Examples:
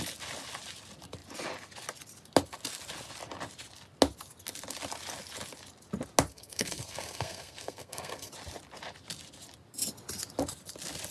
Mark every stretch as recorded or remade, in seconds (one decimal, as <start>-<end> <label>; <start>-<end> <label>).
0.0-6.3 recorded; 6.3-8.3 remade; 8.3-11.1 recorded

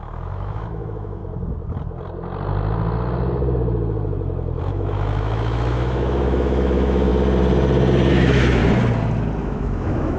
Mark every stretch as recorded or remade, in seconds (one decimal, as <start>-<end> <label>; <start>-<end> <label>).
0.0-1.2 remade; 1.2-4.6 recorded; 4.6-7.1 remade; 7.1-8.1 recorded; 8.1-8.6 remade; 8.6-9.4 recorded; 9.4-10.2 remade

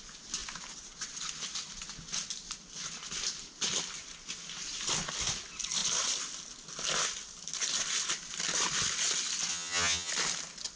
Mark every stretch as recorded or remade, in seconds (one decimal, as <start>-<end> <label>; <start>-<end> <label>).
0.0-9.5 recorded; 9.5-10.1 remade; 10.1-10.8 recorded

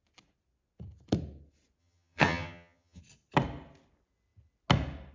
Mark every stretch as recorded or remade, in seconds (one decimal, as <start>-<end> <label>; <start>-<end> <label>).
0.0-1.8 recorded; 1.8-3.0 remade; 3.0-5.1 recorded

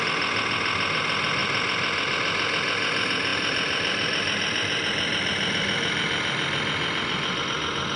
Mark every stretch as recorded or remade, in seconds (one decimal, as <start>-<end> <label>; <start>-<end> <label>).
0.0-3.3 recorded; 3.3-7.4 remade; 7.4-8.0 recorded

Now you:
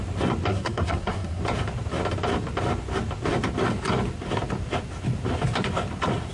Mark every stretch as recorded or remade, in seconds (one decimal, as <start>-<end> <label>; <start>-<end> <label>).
0.0-0.5 recorded; 0.5-1.4 remade; 1.4-6.3 recorded

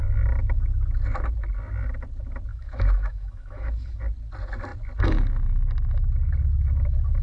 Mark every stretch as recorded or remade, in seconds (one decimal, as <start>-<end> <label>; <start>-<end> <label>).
0.0-2.5 recorded; 2.5-4.0 remade; 4.0-7.2 recorded